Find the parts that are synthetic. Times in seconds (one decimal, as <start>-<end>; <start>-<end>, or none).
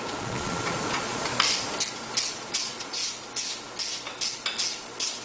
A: 0.0-1.3; 2.3-3.0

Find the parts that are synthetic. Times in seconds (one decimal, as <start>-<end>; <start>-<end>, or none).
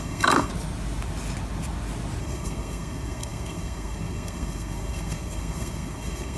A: 0.0-0.5; 2.2-6.4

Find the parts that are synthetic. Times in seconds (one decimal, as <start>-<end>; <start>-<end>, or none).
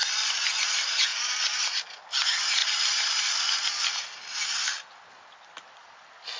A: none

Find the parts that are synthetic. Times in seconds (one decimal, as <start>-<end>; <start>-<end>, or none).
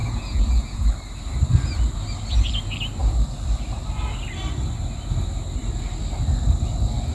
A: 0.0-0.9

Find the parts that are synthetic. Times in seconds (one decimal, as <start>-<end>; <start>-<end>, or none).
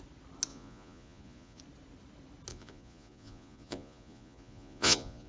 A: 0.5-1.6; 2.5-5.3